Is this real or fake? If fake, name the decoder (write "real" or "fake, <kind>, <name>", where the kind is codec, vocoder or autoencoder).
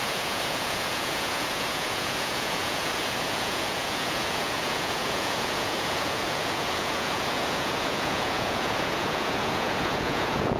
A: fake, vocoder, Vocos